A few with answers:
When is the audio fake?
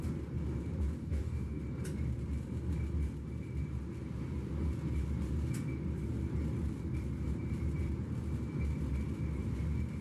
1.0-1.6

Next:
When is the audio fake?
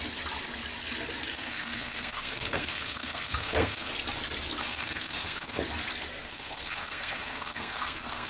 1.3-3.9; 4.6-5.6; 6.2-8.3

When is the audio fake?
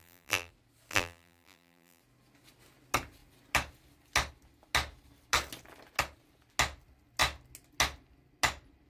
0.0-0.5; 0.9-2.0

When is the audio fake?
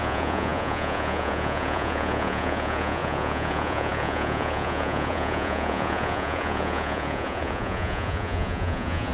0.0-9.1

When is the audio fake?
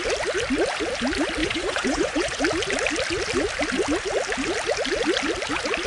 1.4-2.4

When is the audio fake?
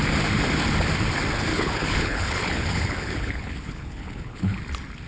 1.5-4.6